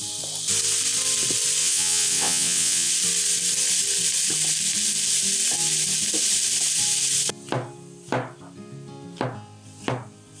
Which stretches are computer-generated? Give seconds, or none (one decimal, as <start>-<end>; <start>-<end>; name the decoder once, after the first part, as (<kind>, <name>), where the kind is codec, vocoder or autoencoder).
1.6-2.9 (vocoder, WaveNeXt)